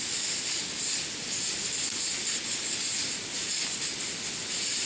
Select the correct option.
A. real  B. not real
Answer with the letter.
A